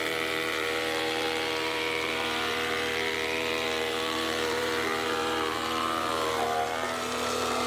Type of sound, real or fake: fake